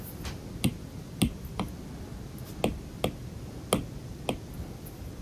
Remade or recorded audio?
recorded